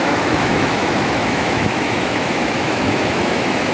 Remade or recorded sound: remade